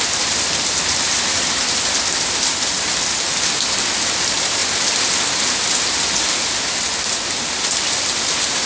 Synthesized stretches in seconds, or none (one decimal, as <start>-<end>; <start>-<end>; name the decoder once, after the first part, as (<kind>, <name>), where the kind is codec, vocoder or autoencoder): none